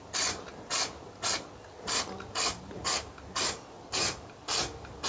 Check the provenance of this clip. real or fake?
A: real